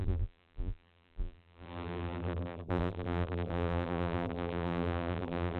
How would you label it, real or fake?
fake